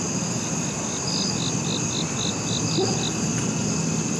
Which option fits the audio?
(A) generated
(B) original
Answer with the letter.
B